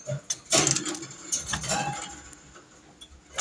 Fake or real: real